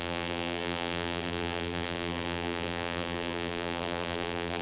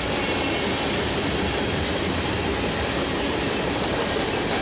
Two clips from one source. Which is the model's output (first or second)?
first